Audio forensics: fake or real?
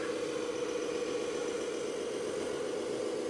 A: real